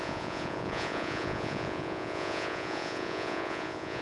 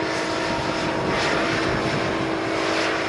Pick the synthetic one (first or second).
first